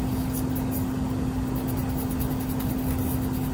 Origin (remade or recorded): recorded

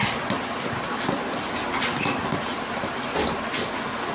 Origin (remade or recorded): recorded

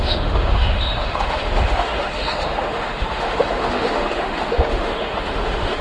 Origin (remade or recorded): remade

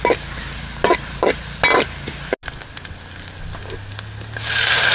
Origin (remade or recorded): recorded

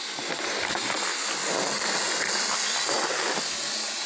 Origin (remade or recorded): recorded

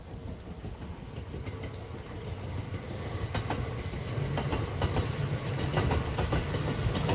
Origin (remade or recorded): recorded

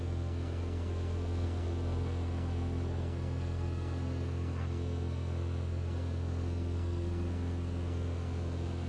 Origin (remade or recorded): remade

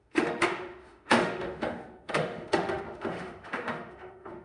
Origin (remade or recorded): remade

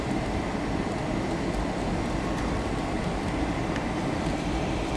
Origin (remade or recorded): remade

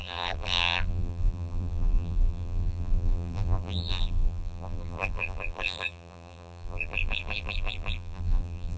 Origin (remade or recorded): remade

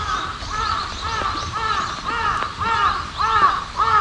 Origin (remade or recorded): recorded